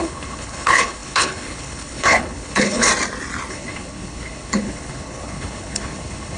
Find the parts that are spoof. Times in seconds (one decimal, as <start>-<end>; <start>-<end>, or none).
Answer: 0.0-2.9; 3.5-6.4